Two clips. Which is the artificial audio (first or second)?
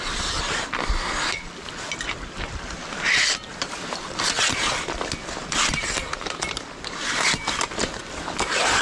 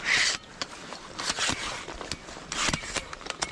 second